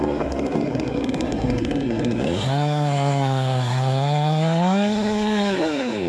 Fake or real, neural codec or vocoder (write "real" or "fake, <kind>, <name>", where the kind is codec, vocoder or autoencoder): fake, codec, SNAC